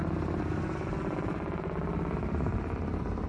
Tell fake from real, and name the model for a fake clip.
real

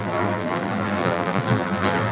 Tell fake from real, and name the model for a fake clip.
fake, vocoder, BigVGAN v2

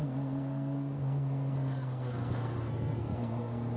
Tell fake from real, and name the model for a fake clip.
fake, codec, SNAC